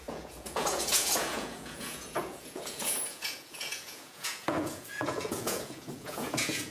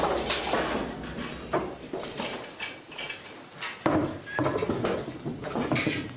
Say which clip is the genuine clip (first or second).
second